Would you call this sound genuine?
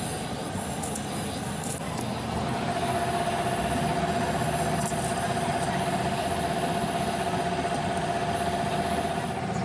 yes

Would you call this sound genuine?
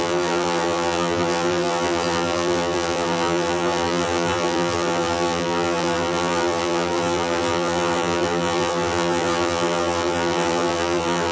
no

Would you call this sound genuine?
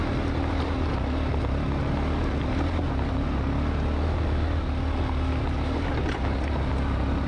yes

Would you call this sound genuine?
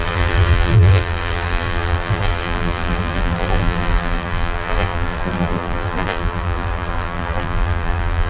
no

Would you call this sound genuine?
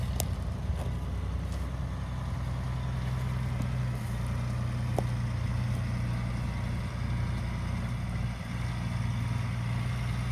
yes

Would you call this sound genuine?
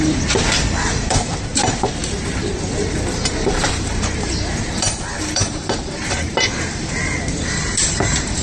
no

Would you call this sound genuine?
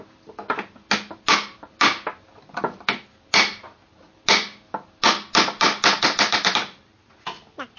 yes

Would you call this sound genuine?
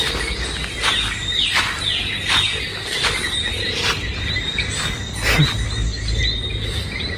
yes